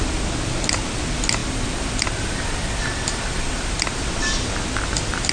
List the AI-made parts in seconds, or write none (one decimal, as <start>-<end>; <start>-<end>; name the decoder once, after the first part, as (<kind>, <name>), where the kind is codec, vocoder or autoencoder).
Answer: 1.4-4.0 (vocoder, BigVGAN v2)